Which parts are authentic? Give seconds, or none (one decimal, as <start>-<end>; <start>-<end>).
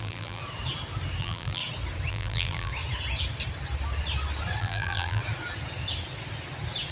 0.4-1.2; 1.6-2.1; 2.7-4.6; 5.2-6.9